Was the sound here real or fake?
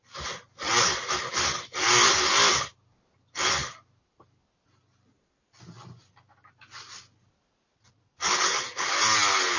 real